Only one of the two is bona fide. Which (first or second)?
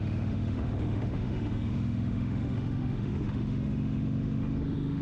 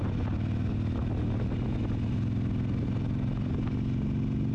second